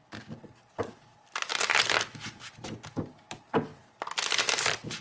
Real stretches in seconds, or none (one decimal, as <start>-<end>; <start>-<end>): 0.0-5.0